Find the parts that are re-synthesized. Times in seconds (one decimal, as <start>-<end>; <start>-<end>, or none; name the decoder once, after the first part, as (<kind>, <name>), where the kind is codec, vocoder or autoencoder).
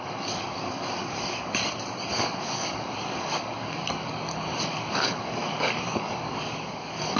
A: 0.0-1.6 (codec, DAC); 2.1-7.2